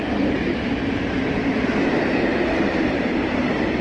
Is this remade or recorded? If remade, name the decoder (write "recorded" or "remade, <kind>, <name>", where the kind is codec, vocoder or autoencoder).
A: recorded